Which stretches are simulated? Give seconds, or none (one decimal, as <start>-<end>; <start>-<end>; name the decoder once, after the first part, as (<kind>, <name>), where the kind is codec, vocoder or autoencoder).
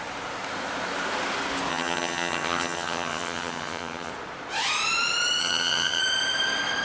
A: 1.7-4.1 (vocoder, HiFi-GAN); 5.4-6.0